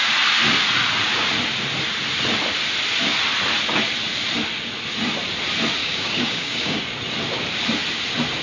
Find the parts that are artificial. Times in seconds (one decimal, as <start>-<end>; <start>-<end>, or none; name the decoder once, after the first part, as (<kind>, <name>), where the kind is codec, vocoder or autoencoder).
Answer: 5.8-6.8 (codec, DAC)